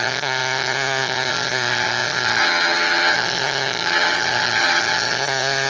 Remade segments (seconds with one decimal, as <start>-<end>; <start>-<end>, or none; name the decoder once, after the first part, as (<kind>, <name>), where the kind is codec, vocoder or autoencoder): 0.0-5.7 (vocoder, HiFi-GAN)